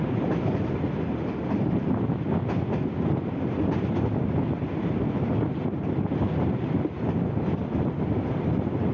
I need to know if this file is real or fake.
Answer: real